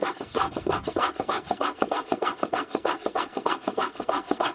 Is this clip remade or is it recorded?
remade